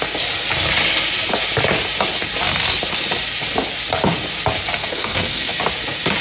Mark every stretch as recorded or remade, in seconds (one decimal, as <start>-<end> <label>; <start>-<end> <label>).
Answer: 0.0-4.8 recorded; 4.8-5.6 remade; 5.6-6.2 recorded